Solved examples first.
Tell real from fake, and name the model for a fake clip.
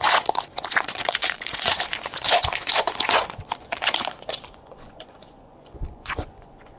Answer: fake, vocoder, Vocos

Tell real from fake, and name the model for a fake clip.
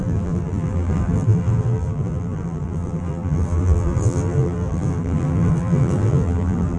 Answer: fake, vocoder, BigVGAN v2